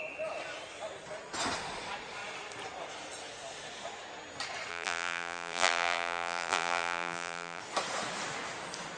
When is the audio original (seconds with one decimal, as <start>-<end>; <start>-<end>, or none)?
0.0-4.7; 7.6-9.0